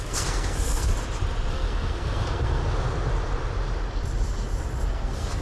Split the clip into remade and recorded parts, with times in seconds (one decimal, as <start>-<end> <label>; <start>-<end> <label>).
0.0-0.9 remade; 0.9-1.5 recorded; 1.5-2.6 remade; 2.6-4.9 recorded; 4.9-5.4 remade